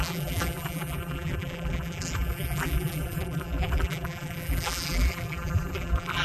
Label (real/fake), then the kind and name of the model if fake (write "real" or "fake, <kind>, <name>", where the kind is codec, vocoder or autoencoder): fake, vocoder, BigVGAN v2